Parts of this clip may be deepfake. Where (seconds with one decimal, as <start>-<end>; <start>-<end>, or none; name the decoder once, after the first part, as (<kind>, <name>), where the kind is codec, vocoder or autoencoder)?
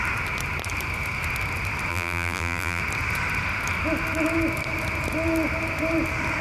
1.9-2.8 (vocoder, BigVGAN v2)